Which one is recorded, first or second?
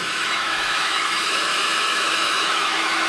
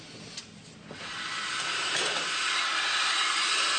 second